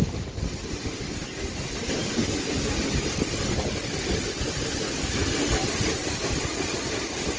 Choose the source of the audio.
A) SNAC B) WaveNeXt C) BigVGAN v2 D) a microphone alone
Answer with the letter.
D